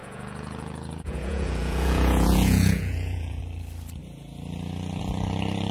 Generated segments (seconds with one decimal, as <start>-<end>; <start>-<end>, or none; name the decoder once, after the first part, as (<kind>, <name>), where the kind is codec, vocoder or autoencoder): 0.0-3.4 (vocoder, Vocos)